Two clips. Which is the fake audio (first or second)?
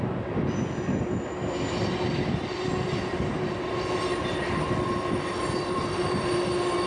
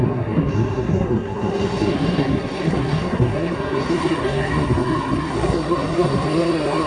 second